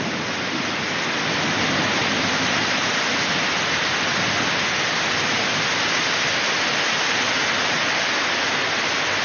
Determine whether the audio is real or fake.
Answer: real